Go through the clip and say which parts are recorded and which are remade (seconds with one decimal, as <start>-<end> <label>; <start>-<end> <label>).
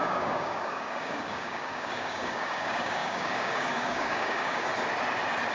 0.0-4.7 remade; 4.7-5.5 recorded